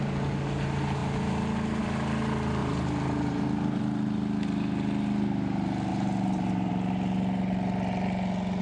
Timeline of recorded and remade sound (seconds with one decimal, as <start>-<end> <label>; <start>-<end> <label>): 0.0-2.6 recorded; 2.6-3.8 remade; 3.8-5.9 recorded; 5.9-6.7 remade; 6.7-8.6 recorded

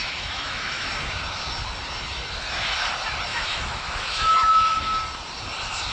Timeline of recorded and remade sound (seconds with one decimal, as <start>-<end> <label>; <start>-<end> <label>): 0.0-0.9 remade; 0.9-3.3 recorded; 3.3-4.8 remade; 4.8-5.9 recorded

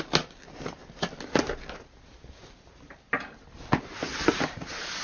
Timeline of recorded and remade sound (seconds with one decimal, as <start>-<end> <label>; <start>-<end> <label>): 0.0-5.0 recorded

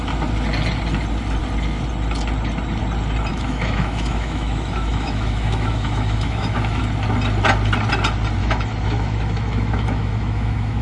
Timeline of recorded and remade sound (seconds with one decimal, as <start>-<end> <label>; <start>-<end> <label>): 0.0-3.3 recorded; 3.3-6.8 remade; 6.8-8.4 recorded; 8.4-10.8 remade

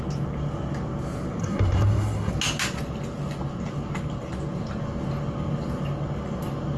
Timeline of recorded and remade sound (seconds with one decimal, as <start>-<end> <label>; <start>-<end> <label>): 0.0-1.4 recorded; 1.4-2.3 remade; 2.3-6.8 recorded